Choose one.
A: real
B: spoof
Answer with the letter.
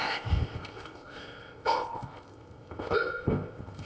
B